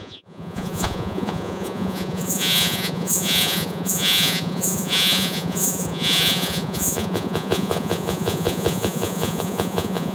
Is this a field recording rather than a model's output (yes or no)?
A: no